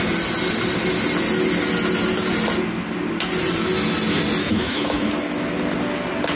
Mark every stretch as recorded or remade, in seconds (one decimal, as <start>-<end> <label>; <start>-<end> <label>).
0.0-4.4 recorded; 4.4-5.1 remade; 5.1-6.4 recorded